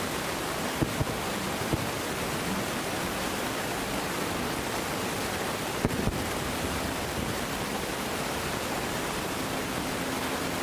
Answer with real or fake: real